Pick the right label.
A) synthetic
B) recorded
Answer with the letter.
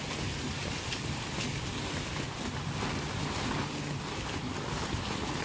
B